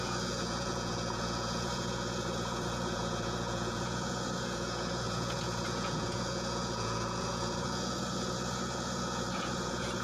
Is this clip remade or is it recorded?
remade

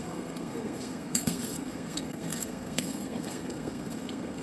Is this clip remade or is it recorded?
remade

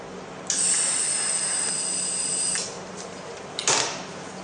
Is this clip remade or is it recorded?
recorded